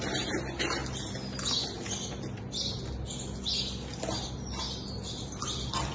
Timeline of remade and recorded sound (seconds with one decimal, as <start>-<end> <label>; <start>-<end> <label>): 0.0-5.9 recorded